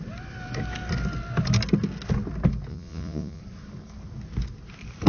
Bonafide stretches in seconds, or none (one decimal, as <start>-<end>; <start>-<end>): 0.0-2.7; 3.4-5.1